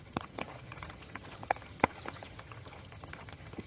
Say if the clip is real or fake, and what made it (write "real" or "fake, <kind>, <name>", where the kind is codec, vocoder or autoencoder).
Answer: fake, vocoder, HiFi-GAN